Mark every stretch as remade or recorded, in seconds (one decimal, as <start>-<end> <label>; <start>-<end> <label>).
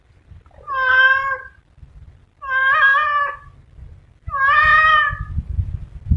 0.0-6.2 recorded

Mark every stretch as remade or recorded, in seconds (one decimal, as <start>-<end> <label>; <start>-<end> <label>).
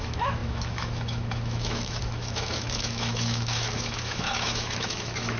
0.0-5.4 remade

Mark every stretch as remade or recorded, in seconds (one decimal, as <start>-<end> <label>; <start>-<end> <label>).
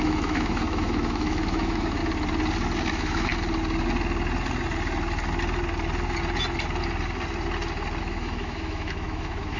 0.0-2.0 remade; 2.0-2.9 recorded; 2.9-3.3 remade; 3.3-8.0 recorded; 8.0-9.6 remade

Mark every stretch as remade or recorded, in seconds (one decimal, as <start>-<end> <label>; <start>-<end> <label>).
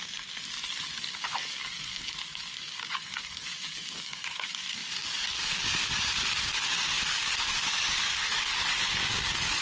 0.0-1.0 recorded; 1.0-9.6 remade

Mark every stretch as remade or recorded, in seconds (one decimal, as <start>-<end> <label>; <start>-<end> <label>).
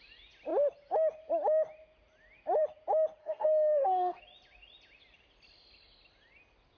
0.0-3.2 recorded; 3.2-4.2 remade; 4.2-6.8 recorded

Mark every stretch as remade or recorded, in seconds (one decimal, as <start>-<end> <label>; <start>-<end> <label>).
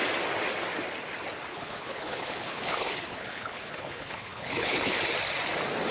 0.0-1.5 recorded; 1.5-5.0 remade; 5.0-5.9 recorded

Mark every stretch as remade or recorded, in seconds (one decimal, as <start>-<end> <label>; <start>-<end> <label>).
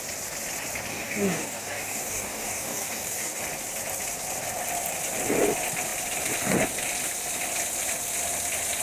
0.0-0.9 recorded; 0.9-3.4 remade; 3.4-8.8 recorded